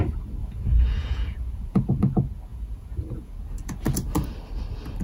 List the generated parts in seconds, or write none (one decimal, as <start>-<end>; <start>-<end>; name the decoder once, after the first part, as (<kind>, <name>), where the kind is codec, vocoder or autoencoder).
0.4-1.9 (vocoder, Vocos); 2.5-3.3